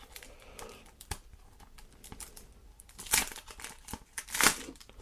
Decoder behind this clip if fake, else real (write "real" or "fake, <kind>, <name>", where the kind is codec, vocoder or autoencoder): fake, vocoder, BigVGAN v2